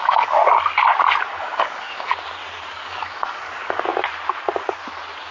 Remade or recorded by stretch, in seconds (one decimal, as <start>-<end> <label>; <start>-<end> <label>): 0.0-0.4 remade; 0.4-1.4 recorded; 1.4-2.1 remade; 2.1-2.7 recorded; 2.7-3.9 remade; 3.9-5.3 recorded